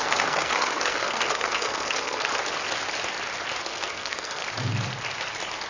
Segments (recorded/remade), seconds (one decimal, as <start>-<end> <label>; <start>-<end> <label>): 0.0-2.3 remade; 2.3-3.6 recorded; 3.6-4.4 remade; 4.4-5.7 recorded